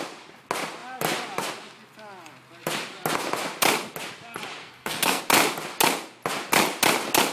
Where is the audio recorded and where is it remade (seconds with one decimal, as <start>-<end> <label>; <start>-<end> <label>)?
0.0-4.6 recorded; 4.6-5.2 remade; 5.2-7.3 recorded